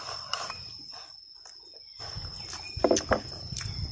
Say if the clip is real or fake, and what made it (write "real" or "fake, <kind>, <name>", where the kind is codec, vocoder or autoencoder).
real